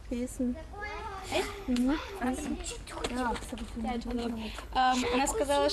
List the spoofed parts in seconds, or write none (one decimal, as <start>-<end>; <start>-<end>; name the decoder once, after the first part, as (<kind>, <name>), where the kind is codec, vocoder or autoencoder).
1.2-2.2 (codec, HILCodec); 4.2-5.2